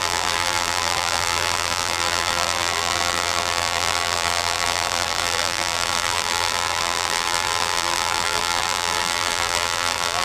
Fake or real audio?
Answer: fake